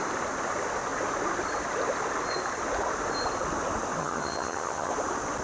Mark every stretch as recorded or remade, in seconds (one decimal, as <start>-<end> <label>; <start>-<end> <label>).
0.0-4.0 recorded; 4.0-4.9 remade; 4.9-5.4 recorded